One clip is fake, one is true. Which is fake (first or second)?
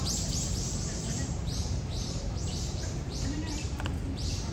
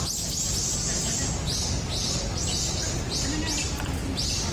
first